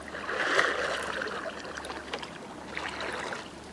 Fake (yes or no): no